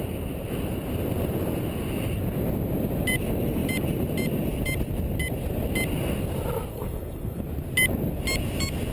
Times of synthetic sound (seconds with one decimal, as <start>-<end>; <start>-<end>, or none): 6.7-7.4

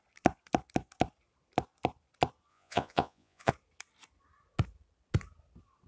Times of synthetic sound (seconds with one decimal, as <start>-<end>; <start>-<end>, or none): 2.5-3.5